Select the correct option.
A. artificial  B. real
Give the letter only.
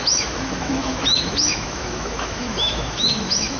A